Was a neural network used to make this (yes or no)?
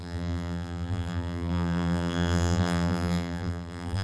yes